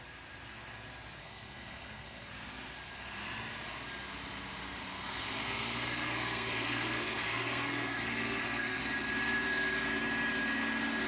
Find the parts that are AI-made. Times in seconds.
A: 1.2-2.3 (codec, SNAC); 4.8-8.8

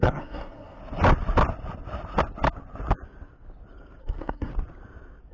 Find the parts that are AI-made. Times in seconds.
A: 0.0-0.8 (codec, SNAC); 4.0-4.5

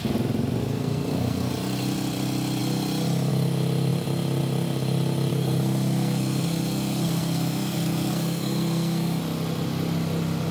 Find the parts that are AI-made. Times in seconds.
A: 0.6-1.5 (codec, SNAC); 5.3-9.2

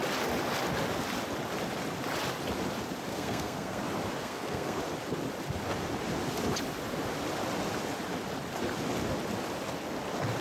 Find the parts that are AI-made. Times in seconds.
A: 3.1-3.8 (codec, SNAC); 4.2-4.8

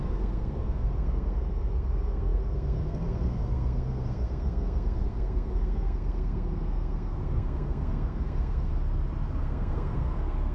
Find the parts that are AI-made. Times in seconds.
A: 0.0-8.7 (codec, SNAC); 9.4-10.5

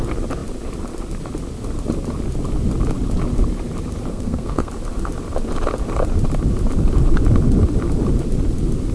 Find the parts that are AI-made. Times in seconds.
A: 4.1-4.7 (codec, SNAC)